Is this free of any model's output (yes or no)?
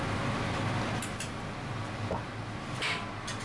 yes